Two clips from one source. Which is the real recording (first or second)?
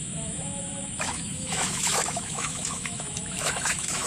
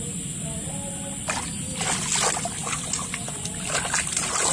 second